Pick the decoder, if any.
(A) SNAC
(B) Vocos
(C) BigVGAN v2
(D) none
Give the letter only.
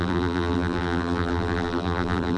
C